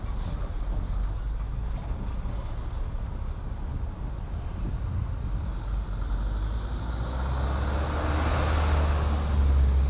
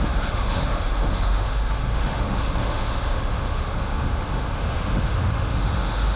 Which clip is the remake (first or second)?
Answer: second